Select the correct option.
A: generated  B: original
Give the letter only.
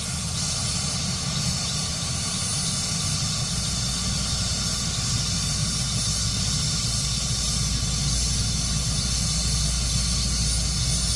B